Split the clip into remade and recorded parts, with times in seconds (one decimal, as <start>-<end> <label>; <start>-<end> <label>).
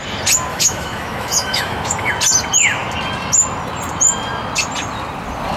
0.0-0.5 recorded; 0.5-2.1 remade; 2.1-5.6 recorded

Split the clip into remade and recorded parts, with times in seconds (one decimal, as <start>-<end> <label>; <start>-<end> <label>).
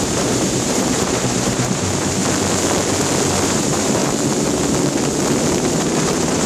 0.0-2.2 remade; 2.2-3.4 recorded; 3.4-4.0 remade; 4.0-5.6 recorded; 5.6-6.5 remade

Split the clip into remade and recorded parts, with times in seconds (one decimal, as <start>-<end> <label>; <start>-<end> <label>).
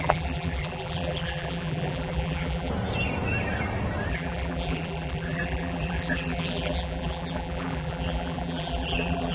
0.0-2.7 remade; 2.7-4.1 recorded; 4.1-9.3 remade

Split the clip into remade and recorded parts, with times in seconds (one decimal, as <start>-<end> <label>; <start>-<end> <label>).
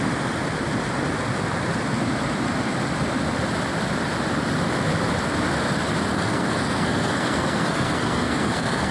0.0-6.1 recorded; 6.1-8.9 remade